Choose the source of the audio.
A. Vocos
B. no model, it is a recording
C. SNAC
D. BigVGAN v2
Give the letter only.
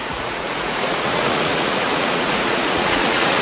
A